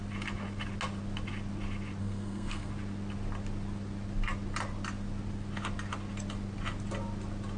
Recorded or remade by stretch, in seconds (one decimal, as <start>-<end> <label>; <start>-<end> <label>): 0.0-2.0 recorded; 2.0-2.7 remade; 2.7-7.6 recorded